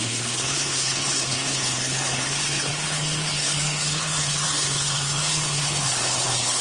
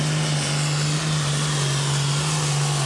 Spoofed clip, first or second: first